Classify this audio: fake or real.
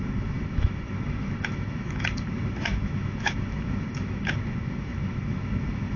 fake